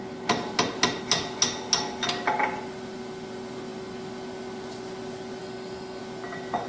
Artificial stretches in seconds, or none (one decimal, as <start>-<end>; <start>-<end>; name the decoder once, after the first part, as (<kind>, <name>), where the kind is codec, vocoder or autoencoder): 5.4-6.0 (codec, DAC)